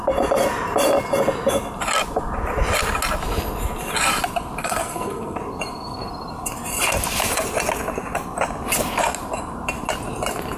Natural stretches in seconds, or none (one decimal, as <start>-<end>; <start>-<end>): 0.0-4.6; 5.4-10.6

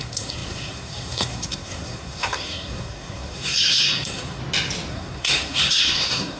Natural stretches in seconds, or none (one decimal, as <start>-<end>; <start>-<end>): 4.4-4.9

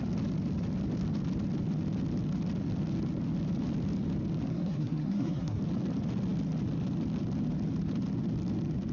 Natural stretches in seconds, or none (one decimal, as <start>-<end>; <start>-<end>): 0.0-4.5; 5.6-8.9

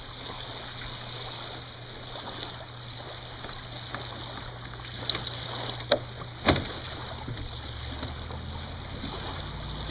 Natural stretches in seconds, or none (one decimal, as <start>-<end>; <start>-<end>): 0.0-9.9